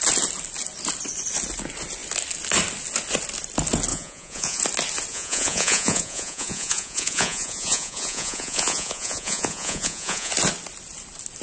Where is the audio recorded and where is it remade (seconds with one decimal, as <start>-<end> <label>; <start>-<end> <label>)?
0.0-3.9 recorded; 3.9-4.6 remade; 4.6-5.1 recorded; 5.1-10.3 remade; 10.3-11.4 recorded